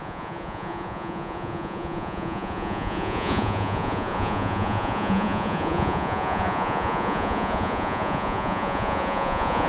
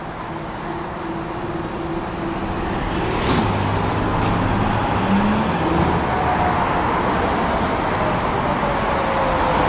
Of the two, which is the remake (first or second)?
first